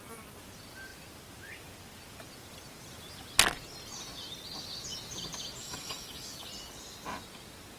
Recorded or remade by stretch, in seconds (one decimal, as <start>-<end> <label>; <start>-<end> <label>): 0.0-5.6 recorded; 5.6-6.5 remade; 6.5-7.8 recorded